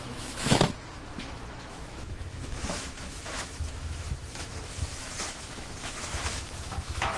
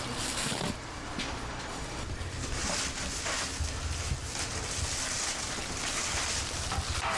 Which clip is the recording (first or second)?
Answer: second